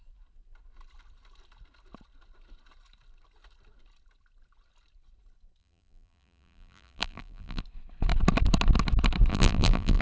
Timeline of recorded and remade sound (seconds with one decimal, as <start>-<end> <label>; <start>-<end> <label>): 0.0-5.6 recorded; 5.6-7.6 remade; 7.6-9.3 recorded; 9.3-10.0 remade